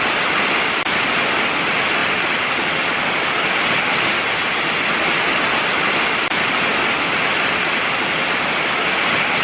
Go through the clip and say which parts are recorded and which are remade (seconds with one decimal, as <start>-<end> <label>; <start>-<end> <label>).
0.0-9.4 recorded